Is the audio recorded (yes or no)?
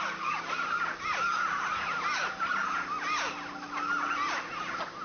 yes